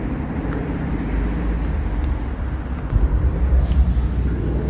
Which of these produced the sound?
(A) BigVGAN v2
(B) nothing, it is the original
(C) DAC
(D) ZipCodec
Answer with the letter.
B